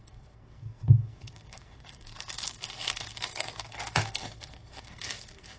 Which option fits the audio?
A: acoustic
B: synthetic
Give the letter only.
B